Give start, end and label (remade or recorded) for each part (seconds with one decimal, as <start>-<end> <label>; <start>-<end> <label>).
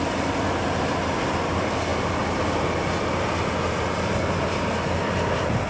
0.0-5.7 recorded